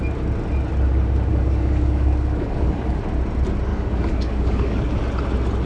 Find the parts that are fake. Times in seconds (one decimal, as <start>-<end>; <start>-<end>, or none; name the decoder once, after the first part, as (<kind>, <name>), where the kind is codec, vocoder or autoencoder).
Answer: 1.3-3.0 (codec, DAC); 3.7-4.9